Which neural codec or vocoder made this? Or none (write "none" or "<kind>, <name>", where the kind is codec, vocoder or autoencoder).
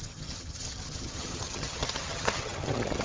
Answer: vocoder, HiFi-GAN